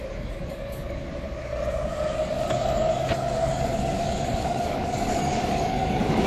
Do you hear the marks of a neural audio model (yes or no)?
yes